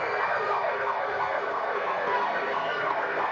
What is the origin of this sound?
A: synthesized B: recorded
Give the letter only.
A